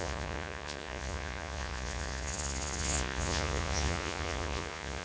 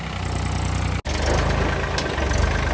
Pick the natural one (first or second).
second